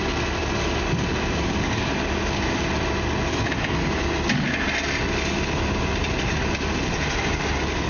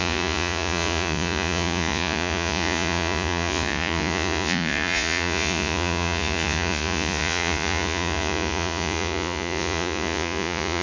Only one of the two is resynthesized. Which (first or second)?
second